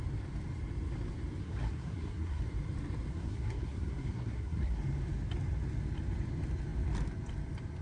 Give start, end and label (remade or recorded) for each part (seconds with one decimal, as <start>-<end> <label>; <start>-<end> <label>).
0.0-1.4 recorded; 1.4-2.4 remade; 2.4-3.1 recorded; 3.1-4.8 remade; 4.8-7.8 recorded

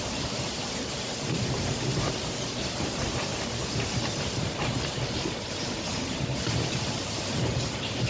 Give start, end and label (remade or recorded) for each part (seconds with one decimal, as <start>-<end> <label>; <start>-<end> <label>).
0.0-3.3 remade; 3.3-4.3 recorded; 4.3-8.1 remade

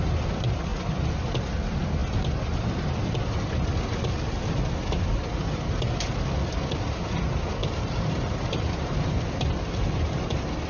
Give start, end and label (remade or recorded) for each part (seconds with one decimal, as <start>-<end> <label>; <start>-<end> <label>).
0.0-7.6 recorded; 7.6-9.2 remade; 9.2-10.7 recorded

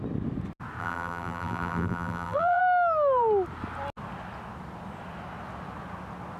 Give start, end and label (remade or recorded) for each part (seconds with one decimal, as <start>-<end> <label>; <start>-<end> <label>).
0.0-0.8 recorded; 0.8-2.6 remade; 2.6-6.4 recorded

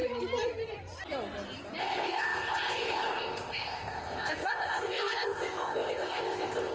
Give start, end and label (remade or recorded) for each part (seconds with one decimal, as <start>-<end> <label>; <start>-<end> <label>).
0.0-1.8 recorded; 1.8-6.7 remade

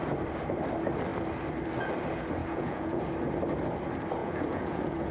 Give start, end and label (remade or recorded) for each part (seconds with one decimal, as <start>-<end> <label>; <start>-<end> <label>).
0.0-2.4 recorded; 2.4-3.1 remade; 3.1-4.2 recorded; 4.2-5.1 remade

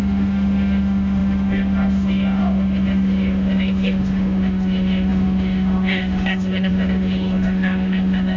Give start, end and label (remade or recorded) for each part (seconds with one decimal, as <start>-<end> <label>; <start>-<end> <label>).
0.0-8.4 remade